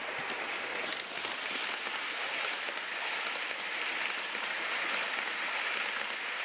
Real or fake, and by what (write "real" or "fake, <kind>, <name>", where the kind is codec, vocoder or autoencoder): real